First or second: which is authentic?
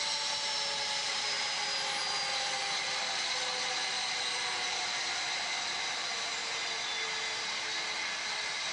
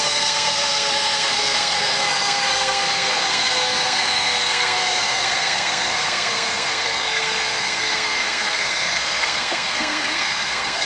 first